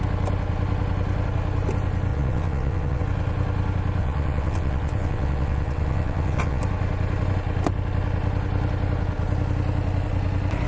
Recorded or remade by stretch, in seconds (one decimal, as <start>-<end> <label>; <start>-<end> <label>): 0.0-2.1 recorded; 2.1-3.0 remade; 3.0-4.0 recorded; 4.0-6.6 remade; 6.6-10.7 recorded